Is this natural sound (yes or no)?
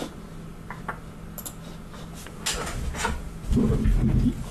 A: yes